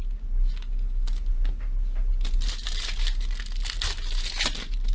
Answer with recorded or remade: recorded